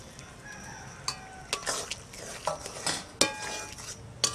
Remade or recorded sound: recorded